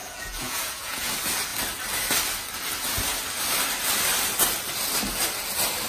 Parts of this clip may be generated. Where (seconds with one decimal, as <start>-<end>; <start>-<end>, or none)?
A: 0.0-1.1